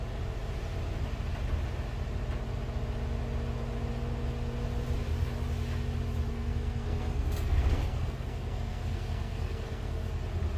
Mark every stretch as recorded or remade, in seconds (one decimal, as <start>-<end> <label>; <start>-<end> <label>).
0.0-6.3 recorded; 6.3-10.1 remade; 10.1-10.6 recorded